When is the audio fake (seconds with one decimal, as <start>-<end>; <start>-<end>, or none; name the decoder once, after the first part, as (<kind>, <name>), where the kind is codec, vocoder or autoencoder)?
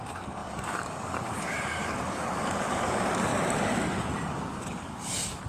0.0-3.3 (codec, DAC); 4.3-5.5